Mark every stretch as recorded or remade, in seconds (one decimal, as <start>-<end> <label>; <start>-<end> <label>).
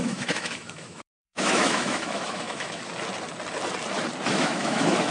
0.0-2.8 remade; 2.8-4.3 recorded; 4.3-5.1 remade